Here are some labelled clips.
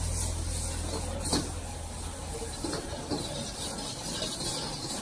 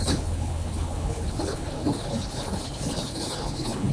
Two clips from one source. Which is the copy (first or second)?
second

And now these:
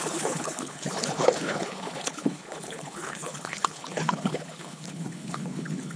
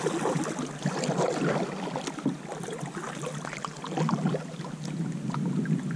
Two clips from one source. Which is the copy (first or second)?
first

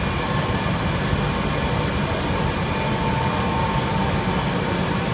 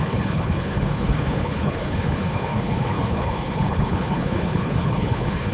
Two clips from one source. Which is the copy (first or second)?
second